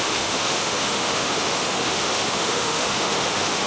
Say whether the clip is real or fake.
fake